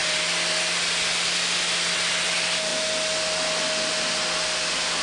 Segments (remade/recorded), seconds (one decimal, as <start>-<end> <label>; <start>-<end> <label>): 0.0-5.0 recorded